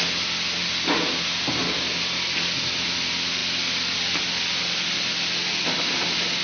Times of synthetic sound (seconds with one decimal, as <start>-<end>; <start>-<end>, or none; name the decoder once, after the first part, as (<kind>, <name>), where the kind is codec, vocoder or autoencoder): none